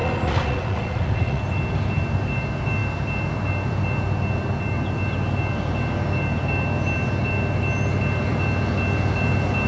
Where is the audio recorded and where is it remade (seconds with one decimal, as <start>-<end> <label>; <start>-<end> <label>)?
0.0-1.4 remade; 1.4-9.7 recorded